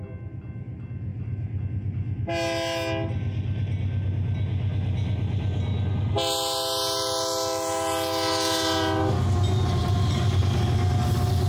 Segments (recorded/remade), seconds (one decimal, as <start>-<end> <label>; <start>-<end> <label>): 0.0-1.1 recorded; 1.1-1.6 remade; 1.6-9.8 recorded; 9.8-10.4 remade; 10.4-11.5 recorded